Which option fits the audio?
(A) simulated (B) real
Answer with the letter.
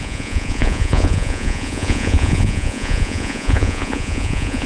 A